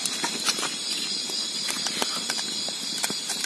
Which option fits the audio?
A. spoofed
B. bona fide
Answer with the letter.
A